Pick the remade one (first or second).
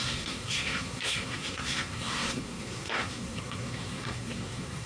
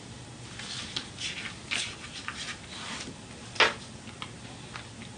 first